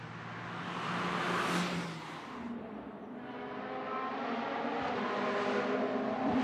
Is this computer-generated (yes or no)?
no